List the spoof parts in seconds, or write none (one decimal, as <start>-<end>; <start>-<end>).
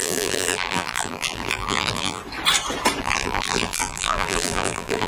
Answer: 0.0-2.2; 3.0-5.1